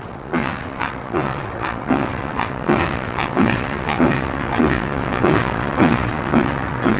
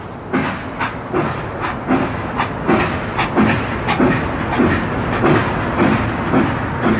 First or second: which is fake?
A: first